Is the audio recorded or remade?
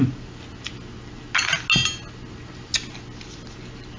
recorded